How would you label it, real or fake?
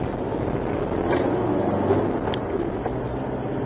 real